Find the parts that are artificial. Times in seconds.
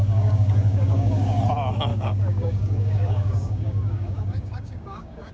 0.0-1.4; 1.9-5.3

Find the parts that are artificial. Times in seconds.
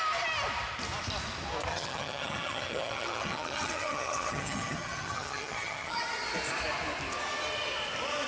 1.7-6.0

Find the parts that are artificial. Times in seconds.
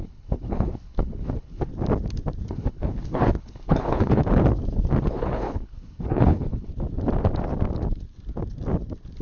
0.0-1.7; 2.5-4.2; 5.0-6.7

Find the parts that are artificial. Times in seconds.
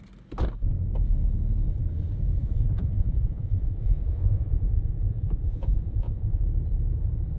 2.4-6.4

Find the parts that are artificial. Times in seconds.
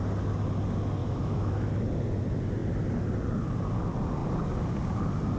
1.0-1.7